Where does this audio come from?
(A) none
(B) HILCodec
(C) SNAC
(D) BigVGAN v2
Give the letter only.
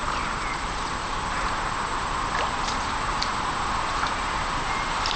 D